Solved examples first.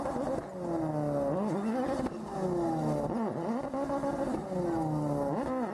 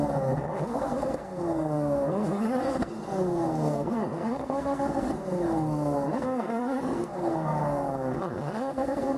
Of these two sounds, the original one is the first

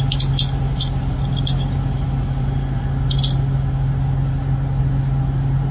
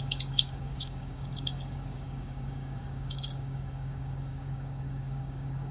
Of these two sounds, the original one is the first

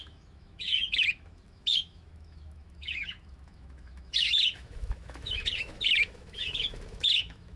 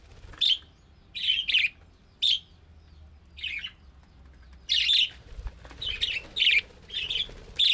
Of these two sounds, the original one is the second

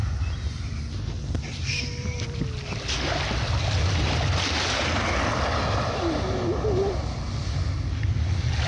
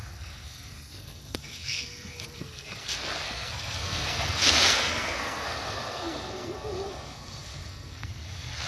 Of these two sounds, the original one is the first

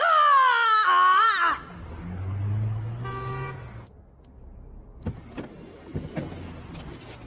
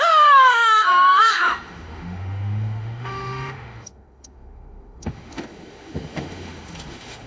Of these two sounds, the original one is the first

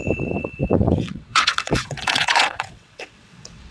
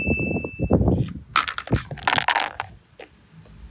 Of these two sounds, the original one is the second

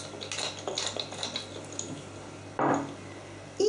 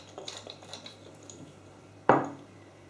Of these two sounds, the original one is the first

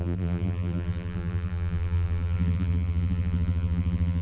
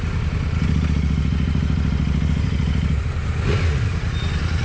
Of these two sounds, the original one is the second